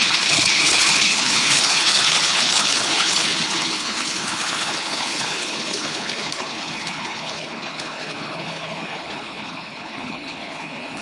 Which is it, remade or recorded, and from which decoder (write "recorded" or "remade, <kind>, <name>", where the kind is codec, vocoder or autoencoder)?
remade, codec, HILCodec